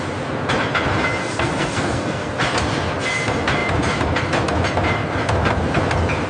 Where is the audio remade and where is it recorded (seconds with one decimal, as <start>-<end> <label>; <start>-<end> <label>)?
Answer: 0.0-1.2 recorded; 1.2-2.3 remade; 2.3-6.3 recorded